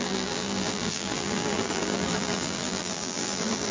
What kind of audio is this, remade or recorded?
remade